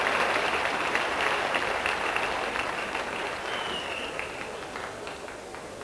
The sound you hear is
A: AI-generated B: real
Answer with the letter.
B